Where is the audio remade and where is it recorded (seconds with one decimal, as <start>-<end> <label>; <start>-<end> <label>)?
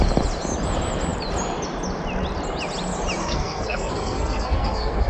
0.0-3.2 recorded; 3.2-5.1 remade